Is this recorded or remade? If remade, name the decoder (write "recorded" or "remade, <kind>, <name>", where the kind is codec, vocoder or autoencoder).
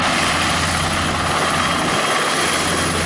recorded